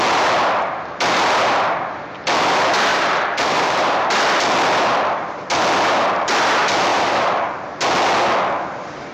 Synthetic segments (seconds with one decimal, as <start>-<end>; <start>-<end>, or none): 2.9-4.1; 6.9-7.5